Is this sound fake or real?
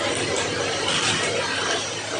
real